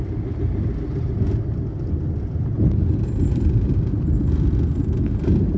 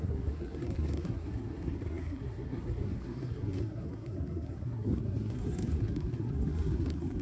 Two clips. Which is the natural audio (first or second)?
first